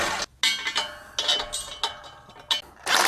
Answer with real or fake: real